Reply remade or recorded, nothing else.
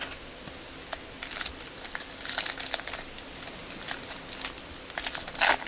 recorded